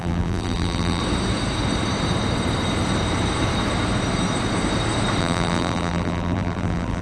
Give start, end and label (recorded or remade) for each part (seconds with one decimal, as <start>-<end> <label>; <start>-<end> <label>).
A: 0.0-1.0 remade; 1.0-5.2 recorded; 5.2-7.0 remade